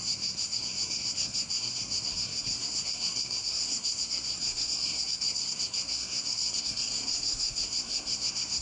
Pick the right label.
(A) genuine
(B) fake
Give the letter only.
B